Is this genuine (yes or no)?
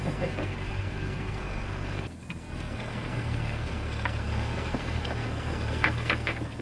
no